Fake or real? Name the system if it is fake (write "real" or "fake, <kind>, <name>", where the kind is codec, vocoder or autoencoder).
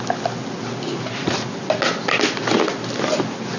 real